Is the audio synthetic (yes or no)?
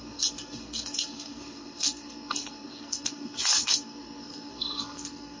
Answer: yes